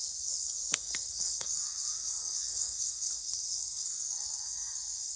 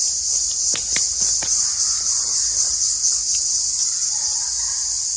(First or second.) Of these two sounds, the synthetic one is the first